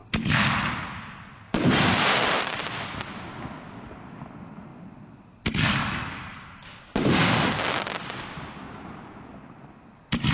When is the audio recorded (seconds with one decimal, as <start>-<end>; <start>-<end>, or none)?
0.0-10.3